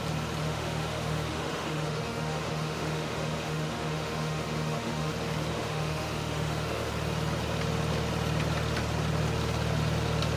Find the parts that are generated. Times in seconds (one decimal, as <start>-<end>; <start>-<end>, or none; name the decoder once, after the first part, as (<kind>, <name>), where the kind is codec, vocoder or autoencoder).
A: 0.4-5.1 (autoencoder, DAC-VAE); 5.5-6.9